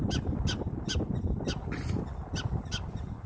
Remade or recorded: recorded